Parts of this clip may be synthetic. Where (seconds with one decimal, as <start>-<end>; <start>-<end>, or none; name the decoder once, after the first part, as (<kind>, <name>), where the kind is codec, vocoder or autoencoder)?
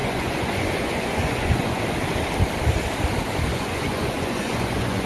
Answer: 0.0-1.8 (vocoder, Vocos); 3.5-5.1